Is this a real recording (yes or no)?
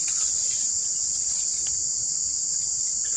yes